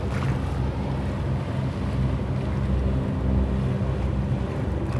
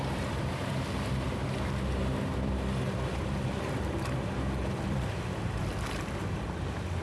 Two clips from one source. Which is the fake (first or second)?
second